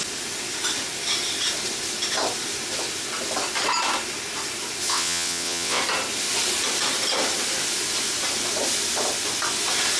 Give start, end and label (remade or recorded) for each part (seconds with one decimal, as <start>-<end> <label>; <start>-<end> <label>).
0.0-4.9 recorded; 4.9-5.8 remade; 5.8-10.0 recorded